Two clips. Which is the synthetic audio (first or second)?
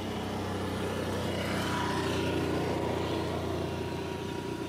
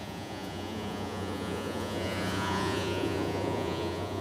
second